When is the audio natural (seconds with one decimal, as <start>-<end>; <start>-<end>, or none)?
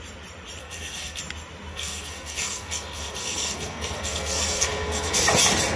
0.0-0.6; 1.2-1.7; 5.2-5.8